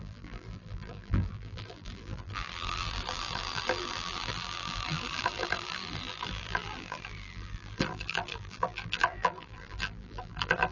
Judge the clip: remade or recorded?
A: remade